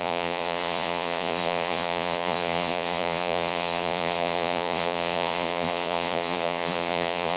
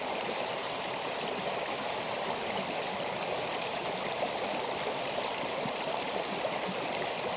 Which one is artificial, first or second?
first